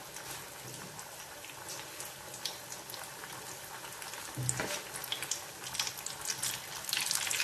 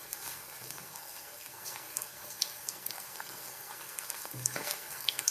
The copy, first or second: second